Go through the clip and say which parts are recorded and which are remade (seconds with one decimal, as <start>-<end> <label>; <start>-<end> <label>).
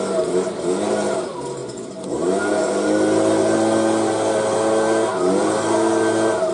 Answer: 0.0-6.5 recorded